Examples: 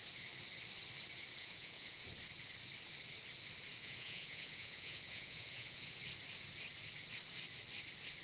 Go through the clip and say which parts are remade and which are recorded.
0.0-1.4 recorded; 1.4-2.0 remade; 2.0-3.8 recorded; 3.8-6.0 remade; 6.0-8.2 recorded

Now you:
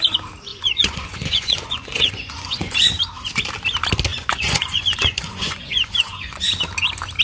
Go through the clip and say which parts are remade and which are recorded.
0.0-0.5 recorded; 0.5-2.9 remade; 2.9-4.1 recorded; 4.1-6.5 remade; 6.5-7.2 recorded

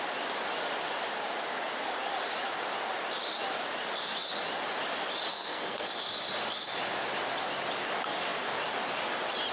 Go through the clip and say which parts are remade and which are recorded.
0.0-5.3 recorded; 5.3-5.9 remade; 5.9-9.5 recorded

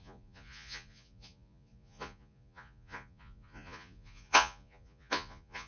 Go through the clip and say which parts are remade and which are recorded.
0.0-5.7 remade

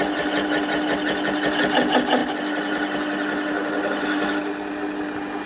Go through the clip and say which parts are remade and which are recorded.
0.0-5.5 recorded

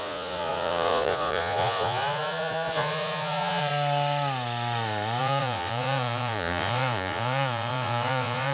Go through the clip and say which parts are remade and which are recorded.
0.0-3.7 remade; 3.7-5.2 recorded; 5.2-8.5 remade

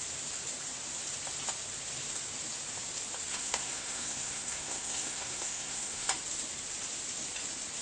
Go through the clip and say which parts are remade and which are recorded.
0.0-3.3 recorded; 3.3-6.1 remade; 6.1-7.8 recorded